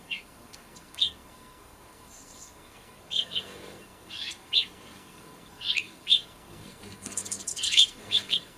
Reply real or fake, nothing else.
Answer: fake